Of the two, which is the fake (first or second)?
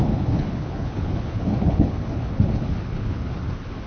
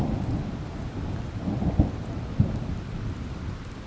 first